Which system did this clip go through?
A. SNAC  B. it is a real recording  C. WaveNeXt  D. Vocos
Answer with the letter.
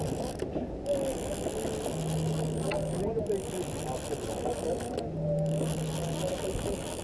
B